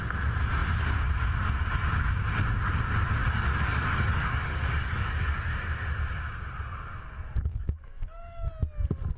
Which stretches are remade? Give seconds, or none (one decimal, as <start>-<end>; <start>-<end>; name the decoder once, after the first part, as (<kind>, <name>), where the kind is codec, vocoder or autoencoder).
3.2-5.5 (codec, DAC); 7.5-8.5